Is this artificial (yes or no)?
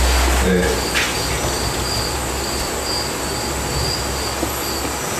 no